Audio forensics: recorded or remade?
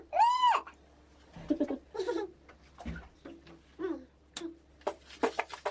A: recorded